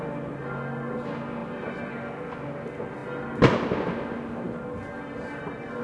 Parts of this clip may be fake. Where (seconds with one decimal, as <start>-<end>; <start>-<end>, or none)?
1.4-1.9